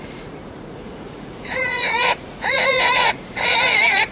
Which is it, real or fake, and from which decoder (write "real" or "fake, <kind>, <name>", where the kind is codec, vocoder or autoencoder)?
fake, vocoder, Vocos